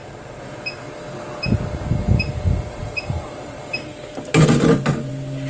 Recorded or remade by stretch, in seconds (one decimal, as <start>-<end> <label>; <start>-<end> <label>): 0.0-0.6 remade; 0.6-2.8 recorded; 2.8-5.1 remade; 5.1-5.5 recorded